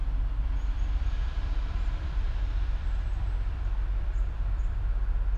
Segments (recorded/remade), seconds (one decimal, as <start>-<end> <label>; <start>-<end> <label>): 0.0-5.4 remade